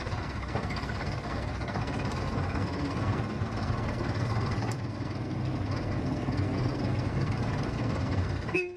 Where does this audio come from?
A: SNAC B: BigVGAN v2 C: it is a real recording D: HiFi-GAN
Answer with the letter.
A